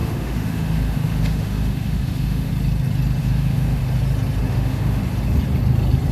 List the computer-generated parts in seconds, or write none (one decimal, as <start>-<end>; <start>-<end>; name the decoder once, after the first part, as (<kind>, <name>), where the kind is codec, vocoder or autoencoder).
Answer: 0.0-2.5 (autoencoder, DAC-VAE); 3.2-3.8; 4.5-5.0